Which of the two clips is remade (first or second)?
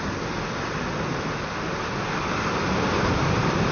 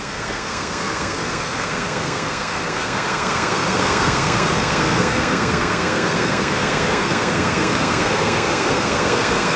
second